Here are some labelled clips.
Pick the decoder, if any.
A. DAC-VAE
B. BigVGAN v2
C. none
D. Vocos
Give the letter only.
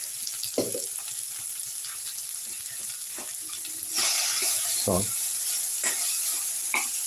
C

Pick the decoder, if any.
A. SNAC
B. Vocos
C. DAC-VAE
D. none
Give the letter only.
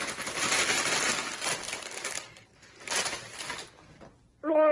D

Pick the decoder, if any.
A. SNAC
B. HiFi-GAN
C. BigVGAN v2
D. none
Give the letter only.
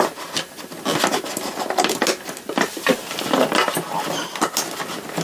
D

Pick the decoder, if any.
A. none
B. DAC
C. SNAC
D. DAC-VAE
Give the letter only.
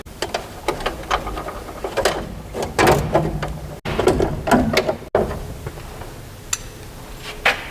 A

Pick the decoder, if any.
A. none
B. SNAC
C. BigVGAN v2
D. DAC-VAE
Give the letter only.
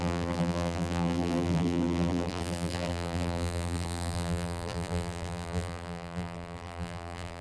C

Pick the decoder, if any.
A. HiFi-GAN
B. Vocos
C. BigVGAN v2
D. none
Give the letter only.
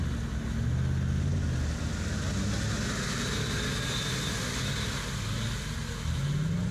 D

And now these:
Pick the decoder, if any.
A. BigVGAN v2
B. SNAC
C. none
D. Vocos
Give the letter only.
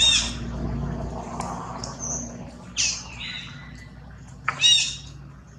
C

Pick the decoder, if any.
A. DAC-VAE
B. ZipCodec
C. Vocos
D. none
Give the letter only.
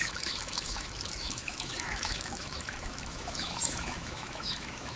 A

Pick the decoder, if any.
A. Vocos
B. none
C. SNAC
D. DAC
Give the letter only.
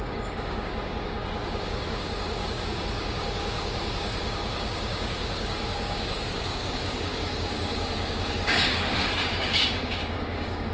D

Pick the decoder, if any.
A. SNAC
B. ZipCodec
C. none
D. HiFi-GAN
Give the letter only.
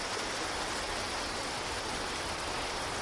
C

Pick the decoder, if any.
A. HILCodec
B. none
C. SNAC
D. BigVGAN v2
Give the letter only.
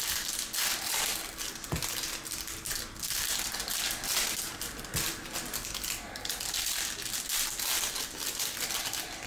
B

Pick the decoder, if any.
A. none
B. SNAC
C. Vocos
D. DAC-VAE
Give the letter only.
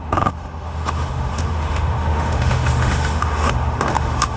D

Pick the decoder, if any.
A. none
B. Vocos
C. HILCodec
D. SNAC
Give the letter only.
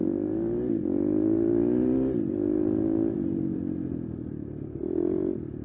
A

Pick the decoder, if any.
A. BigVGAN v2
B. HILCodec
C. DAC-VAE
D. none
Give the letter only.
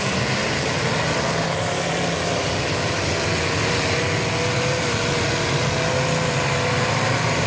D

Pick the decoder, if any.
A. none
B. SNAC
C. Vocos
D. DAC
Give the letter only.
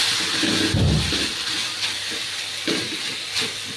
A